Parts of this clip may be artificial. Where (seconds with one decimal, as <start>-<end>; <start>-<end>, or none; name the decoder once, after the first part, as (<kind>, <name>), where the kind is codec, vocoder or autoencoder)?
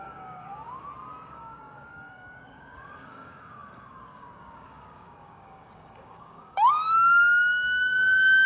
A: 0.0-0.5 (codec, DAC); 1.3-8.5